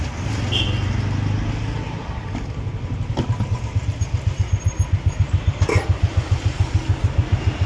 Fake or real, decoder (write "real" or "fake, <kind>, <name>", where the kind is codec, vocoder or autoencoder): real